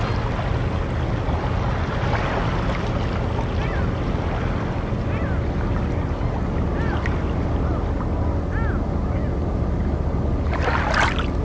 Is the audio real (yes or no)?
yes